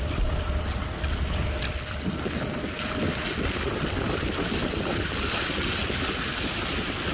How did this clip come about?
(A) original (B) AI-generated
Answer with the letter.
A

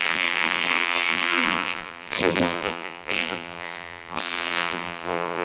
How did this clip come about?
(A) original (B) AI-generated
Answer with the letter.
B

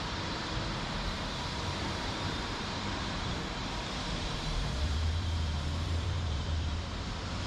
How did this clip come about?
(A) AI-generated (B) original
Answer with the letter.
A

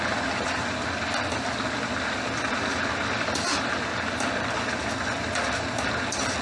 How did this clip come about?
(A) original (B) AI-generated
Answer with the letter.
B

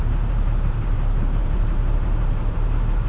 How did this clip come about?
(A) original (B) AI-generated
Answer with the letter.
B